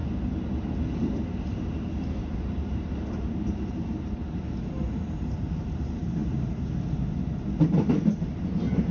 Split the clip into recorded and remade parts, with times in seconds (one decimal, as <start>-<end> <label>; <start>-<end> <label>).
0.0-1.9 recorded; 1.9-4.2 remade; 4.2-5.7 recorded; 5.7-6.2 remade; 6.2-7.9 recorded; 7.9-8.9 remade